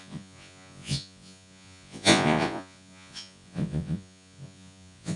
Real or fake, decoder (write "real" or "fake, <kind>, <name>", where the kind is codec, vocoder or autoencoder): fake, vocoder, Vocos